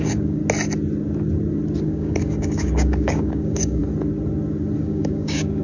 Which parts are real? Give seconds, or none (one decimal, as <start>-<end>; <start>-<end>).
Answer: 0.4-1.8; 3.8-4.8

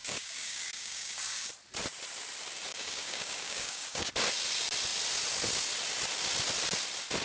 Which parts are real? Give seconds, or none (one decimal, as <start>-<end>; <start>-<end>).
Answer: 1.5-2.7; 4.1-7.2

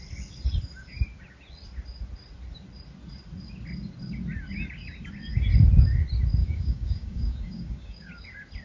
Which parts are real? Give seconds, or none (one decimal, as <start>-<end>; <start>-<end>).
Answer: 0.0-6.4; 8.1-8.6

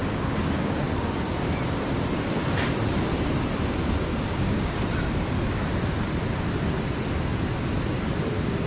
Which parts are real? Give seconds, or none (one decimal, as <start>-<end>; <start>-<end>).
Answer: 0.8-4.1; 4.8-8.7

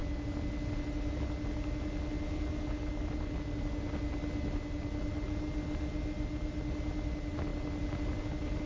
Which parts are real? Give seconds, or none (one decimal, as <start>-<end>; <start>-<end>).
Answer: 0.0-8.7

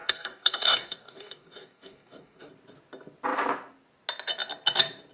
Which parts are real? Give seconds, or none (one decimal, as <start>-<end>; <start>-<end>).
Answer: 2.5-5.1

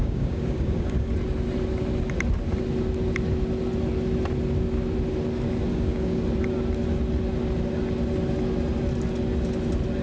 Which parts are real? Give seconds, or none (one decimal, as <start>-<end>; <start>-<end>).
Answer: 1.1-5.7; 6.2-10.0

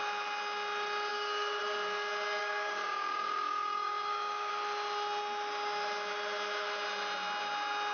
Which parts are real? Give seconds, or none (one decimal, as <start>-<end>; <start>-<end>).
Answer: 0.0-1.1; 1.6-2.4; 4.5-7.9